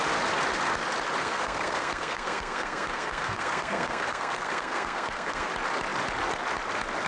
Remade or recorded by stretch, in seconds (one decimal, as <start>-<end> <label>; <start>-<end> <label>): 0.0-1.2 recorded; 1.2-5.5 remade; 5.5-7.1 recorded